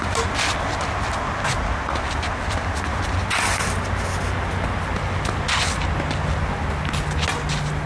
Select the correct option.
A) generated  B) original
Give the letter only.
B